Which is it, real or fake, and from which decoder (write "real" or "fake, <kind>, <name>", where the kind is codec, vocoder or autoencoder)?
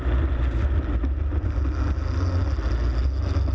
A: real